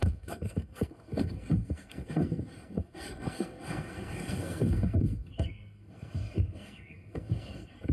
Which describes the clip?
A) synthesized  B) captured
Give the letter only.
A